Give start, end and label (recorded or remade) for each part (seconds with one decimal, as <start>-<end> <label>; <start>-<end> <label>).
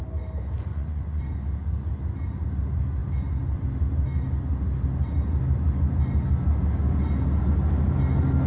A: 0.0-0.7 recorded; 0.7-1.2 remade; 1.2-8.5 recorded